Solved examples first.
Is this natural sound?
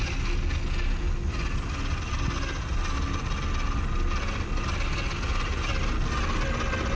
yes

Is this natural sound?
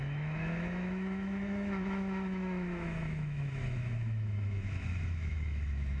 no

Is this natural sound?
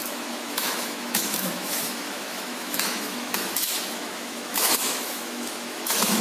no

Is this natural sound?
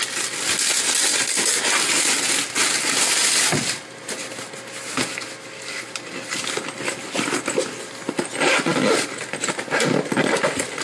yes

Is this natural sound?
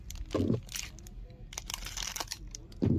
yes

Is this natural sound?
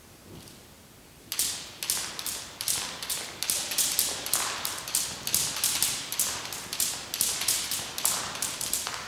yes